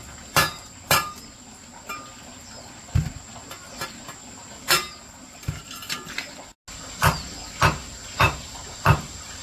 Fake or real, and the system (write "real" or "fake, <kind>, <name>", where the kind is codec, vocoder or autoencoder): real